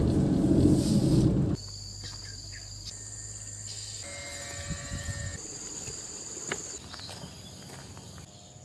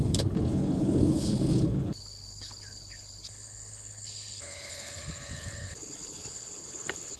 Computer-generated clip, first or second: second